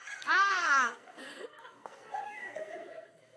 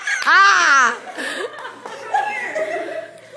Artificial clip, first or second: first